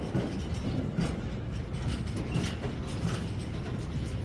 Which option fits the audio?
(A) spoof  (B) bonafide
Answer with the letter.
B